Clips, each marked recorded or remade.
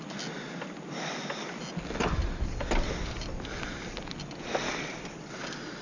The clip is recorded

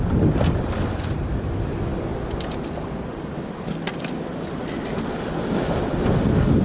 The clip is recorded